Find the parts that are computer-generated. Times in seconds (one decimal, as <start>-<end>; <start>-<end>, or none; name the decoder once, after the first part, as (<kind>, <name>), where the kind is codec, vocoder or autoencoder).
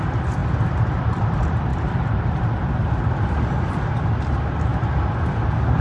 0.0-0.4 (vocoder, BigVGAN v2); 1.0-4.7